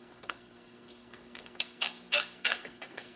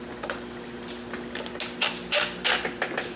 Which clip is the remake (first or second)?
first